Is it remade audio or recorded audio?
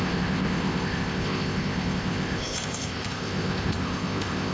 remade